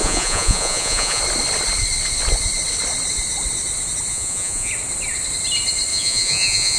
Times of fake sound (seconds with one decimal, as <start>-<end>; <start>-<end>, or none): 0.0-1.2; 4.1-4.7; 5.9-6.8